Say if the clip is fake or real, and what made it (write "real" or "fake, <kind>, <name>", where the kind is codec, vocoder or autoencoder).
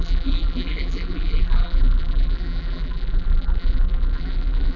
fake, vocoder, BigVGAN v2